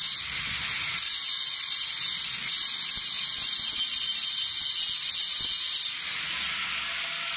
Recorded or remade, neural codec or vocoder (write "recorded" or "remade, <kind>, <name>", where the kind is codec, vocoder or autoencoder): recorded